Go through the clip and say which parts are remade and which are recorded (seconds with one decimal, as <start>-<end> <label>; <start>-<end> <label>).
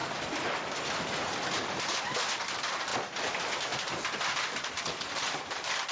0.0-5.9 recorded